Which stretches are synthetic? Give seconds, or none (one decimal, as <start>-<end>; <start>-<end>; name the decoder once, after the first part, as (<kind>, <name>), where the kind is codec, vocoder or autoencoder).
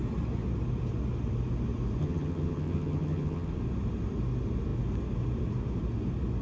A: 2.0-3.5 (vocoder, HiFi-GAN)